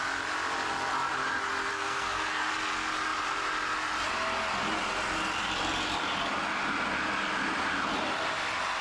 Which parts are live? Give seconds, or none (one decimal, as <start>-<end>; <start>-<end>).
0.0-1.7; 2.5-8.8